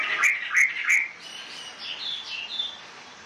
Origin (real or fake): real